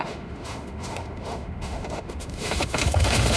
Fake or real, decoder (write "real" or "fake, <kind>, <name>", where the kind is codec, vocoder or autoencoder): fake, autoencoder, DAC-VAE